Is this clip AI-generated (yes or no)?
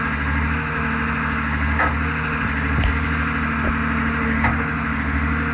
no